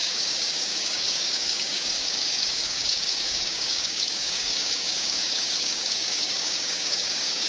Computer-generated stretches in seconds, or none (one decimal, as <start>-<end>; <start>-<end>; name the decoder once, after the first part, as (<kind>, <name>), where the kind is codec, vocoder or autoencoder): 0.0-7.5 (codec, DAC)